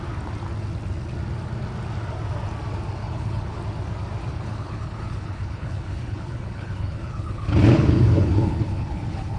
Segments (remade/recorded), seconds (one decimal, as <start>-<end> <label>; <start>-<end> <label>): 0.0-3.0 recorded; 3.0-3.6 remade; 3.6-4.3 recorded; 4.3-9.4 remade